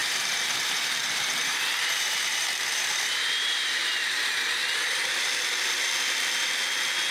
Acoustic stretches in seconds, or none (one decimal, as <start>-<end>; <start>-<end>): 4.6-7.1